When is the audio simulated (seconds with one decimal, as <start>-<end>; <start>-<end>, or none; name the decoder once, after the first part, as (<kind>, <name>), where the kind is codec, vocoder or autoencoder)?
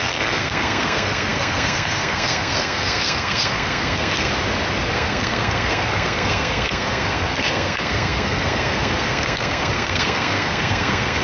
0.0-4.3 (codec, SNAC); 4.9-11.2